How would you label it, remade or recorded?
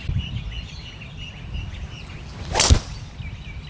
recorded